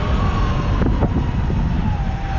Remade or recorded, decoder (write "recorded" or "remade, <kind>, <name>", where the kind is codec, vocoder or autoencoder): recorded